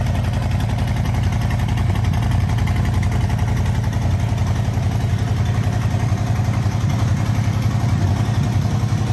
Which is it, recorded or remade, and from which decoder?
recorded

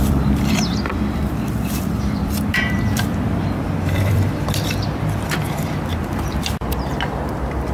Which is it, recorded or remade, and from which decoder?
remade, vocoder, BigVGAN v2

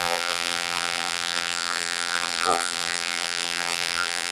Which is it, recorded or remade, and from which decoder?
remade, vocoder, BigVGAN v2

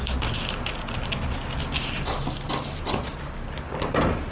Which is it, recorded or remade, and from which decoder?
recorded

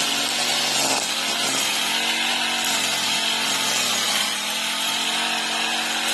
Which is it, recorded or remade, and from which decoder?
recorded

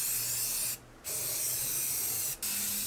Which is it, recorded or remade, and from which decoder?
recorded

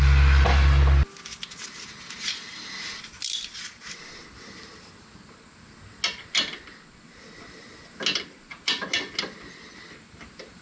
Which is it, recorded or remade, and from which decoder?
recorded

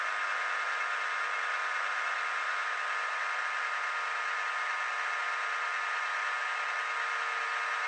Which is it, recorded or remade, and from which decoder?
recorded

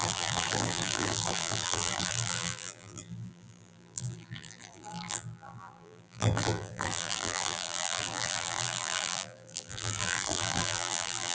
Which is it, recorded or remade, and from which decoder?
remade, vocoder, BigVGAN v2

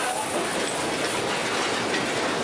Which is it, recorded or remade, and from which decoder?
recorded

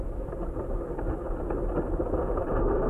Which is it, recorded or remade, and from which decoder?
recorded